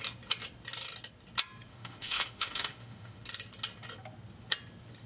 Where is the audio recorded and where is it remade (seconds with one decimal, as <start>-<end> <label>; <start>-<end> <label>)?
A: 0.0-1.7 recorded; 1.7-3.2 remade; 3.2-5.1 recorded

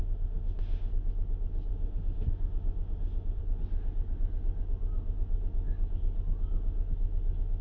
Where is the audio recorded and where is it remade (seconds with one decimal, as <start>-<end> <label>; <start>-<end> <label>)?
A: 0.0-0.9 remade; 0.9-1.7 recorded; 1.7-3.4 remade; 3.4-7.6 recorded